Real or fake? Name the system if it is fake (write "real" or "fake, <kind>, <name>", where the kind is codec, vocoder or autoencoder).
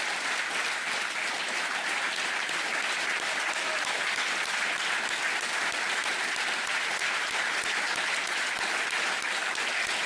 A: real